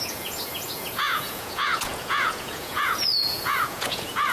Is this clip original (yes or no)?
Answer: no